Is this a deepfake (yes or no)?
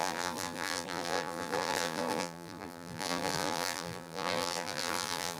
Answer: yes